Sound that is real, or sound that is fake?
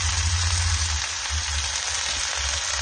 real